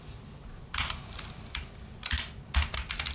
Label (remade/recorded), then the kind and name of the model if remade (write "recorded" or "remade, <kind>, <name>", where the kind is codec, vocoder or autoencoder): recorded